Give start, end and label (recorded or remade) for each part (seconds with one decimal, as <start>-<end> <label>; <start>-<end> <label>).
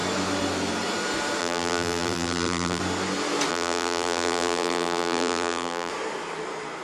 0.0-1.4 recorded; 1.4-2.8 remade; 2.8-3.5 recorded; 3.5-5.9 remade; 5.9-6.8 recorded